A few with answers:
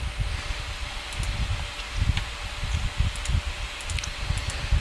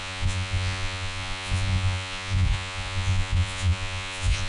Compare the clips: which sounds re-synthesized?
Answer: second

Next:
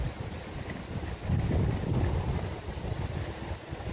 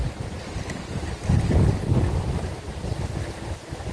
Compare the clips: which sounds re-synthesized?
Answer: first